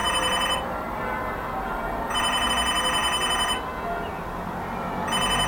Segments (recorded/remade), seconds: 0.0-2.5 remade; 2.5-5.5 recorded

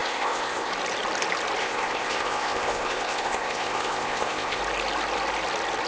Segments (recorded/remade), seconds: 0.0-0.7 remade; 0.7-1.6 recorded; 1.6-4.6 remade; 4.6-5.9 recorded